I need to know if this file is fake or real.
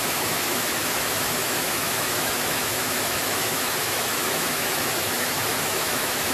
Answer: fake